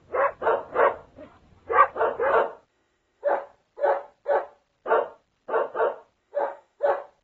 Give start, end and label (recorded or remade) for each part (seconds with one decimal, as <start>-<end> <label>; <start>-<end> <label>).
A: 0.0-2.7 recorded; 2.7-3.4 remade; 3.4-6.2 recorded; 6.2-6.8 remade; 6.8-7.2 recorded

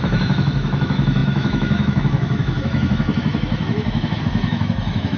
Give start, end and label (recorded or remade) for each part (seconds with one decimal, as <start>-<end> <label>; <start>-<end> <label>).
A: 0.0-5.2 remade